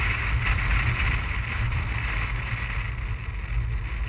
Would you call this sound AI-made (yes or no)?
no